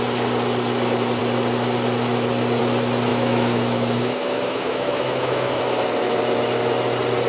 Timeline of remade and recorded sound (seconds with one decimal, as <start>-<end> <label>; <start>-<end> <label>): 0.0-3.1 recorded; 3.1-5.6 remade; 5.6-7.3 recorded